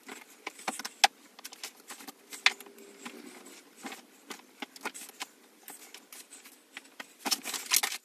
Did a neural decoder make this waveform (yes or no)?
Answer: no